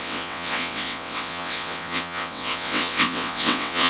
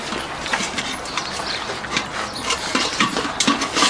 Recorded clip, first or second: second